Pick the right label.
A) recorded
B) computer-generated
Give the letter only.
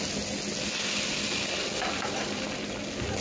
A